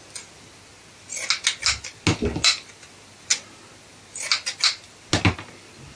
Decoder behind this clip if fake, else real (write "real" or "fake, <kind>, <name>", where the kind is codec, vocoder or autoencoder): real